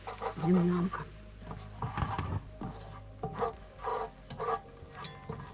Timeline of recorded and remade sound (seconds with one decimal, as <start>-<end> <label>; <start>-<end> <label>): 0.0-5.5 recorded

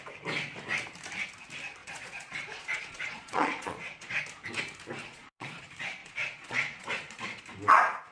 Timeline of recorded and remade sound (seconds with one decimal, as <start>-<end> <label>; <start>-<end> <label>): 0.0-1.8 recorded; 1.8-4.2 remade; 4.2-5.0 recorded; 5.0-5.6 remade; 5.6-6.0 recorded; 6.0-7.4 remade; 7.4-8.1 recorded

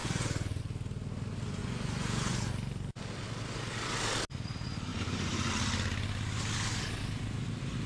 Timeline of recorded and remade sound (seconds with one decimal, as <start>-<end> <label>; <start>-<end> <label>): 0.0-0.6 remade; 0.6-1.6 recorded; 1.6-2.5 remade; 2.5-4.9 recorded; 4.9-5.5 remade; 5.5-7.9 recorded

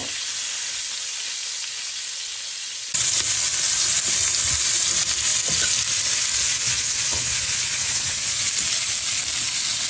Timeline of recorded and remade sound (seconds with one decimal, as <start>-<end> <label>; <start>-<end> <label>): 0.0-6.5 recorded; 6.5-8.5 remade; 8.5-9.9 recorded

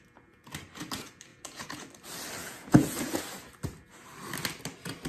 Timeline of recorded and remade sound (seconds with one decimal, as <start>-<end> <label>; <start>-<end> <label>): 0.0-1.3 recorded; 1.3-1.9 remade; 1.9-2.4 recorded; 2.4-3.2 remade; 3.2-5.1 recorded